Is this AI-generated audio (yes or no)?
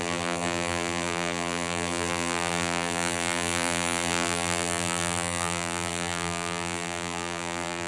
yes